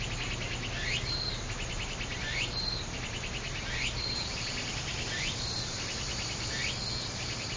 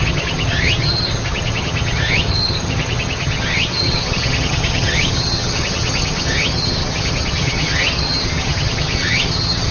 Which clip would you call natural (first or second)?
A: first